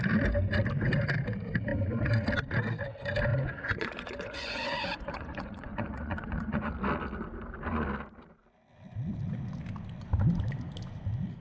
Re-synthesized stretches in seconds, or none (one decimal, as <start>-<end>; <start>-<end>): 3.3-6.7

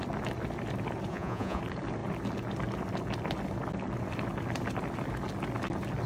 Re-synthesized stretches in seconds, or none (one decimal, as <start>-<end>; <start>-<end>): 1.1-1.6

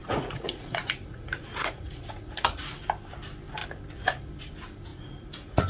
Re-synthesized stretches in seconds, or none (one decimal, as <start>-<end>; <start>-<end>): 0.0-2.8; 4.9-5.7

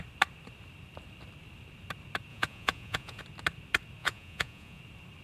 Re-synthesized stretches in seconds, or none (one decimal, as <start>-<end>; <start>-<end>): 2.3-3.2; 4.0-4.8

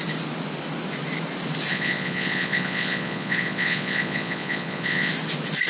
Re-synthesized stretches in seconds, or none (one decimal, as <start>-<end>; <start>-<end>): 1.7-5.1